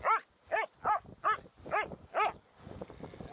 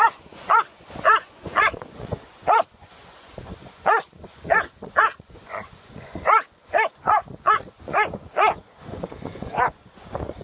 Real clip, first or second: first